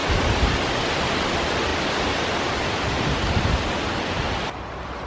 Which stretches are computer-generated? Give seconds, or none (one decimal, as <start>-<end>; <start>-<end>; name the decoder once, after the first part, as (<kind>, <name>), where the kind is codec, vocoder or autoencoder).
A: none